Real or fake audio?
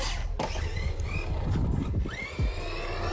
real